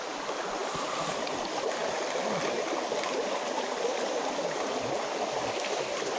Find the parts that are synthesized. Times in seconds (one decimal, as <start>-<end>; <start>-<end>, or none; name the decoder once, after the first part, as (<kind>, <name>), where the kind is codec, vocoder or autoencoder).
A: 0.6-1.4 (vocoder, BigVGAN v2); 3.9-4.8